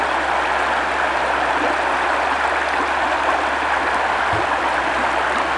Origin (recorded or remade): recorded